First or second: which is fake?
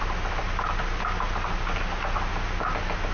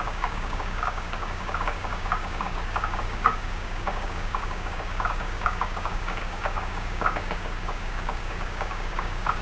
second